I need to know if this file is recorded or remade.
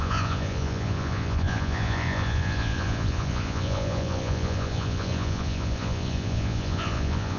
remade